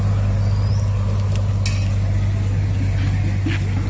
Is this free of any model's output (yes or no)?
yes